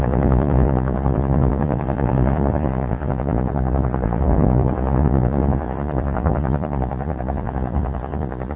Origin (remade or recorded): remade